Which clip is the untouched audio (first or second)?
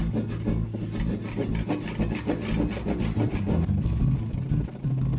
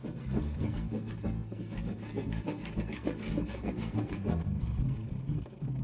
first